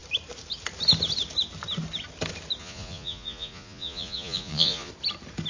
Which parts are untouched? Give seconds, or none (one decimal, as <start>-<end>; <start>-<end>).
0.0-2.6; 4.9-5.5